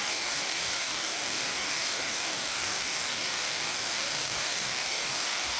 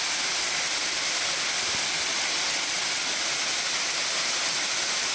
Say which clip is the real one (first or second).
second